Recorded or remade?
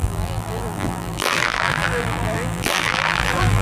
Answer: remade